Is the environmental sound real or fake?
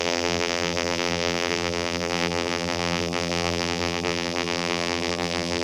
fake